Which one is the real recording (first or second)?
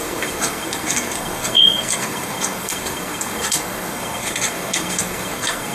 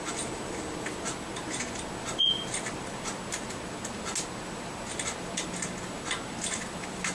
second